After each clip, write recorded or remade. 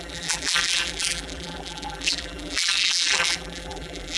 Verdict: remade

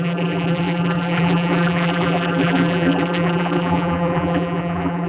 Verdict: remade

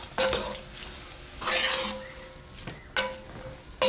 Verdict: recorded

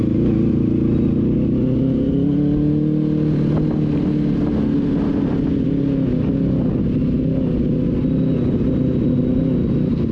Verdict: recorded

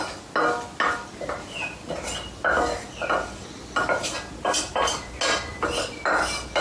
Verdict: recorded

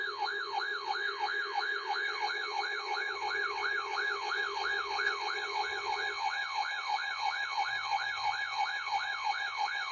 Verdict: remade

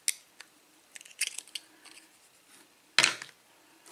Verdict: recorded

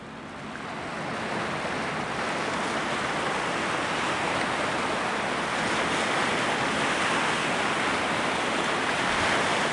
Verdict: recorded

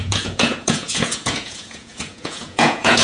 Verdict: remade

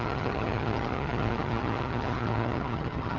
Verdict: remade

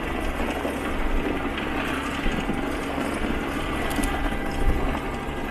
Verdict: recorded